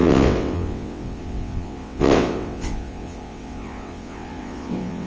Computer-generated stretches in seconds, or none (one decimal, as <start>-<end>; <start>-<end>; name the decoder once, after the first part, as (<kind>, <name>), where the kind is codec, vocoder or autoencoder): 0.0-5.1 (vocoder, WaveNeXt)